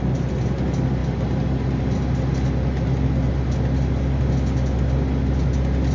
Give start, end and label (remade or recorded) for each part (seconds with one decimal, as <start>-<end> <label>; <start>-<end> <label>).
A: 0.0-5.9 recorded